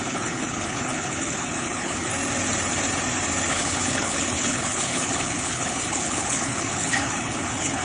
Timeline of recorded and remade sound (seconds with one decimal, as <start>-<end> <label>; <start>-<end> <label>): 0.0-2.1 remade; 2.1-3.5 recorded; 3.5-7.8 remade